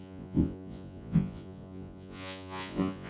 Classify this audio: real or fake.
fake